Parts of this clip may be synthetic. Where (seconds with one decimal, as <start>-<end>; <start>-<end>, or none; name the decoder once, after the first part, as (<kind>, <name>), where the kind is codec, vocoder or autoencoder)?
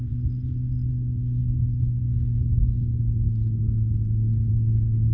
none